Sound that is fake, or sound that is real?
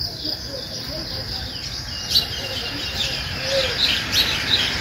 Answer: fake